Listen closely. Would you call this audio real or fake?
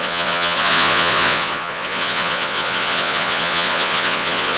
fake